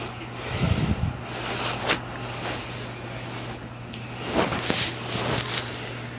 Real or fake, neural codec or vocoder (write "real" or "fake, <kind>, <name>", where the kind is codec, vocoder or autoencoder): real